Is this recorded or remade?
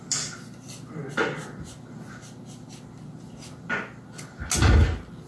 recorded